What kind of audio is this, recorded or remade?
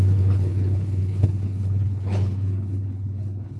remade